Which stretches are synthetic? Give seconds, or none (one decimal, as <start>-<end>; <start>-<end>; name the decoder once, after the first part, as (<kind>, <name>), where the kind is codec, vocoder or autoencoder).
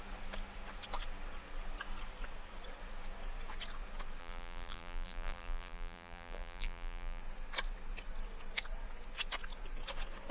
4.2-7.2 (vocoder, BigVGAN v2)